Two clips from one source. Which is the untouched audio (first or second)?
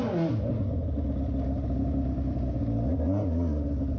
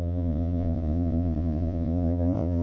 first